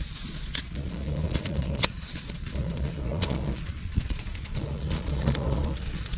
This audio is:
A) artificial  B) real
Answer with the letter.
A